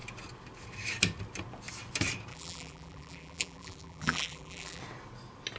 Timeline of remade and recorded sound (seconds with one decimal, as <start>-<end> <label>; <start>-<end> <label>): 0.0-2.3 recorded; 2.3-4.8 remade; 4.8-5.6 recorded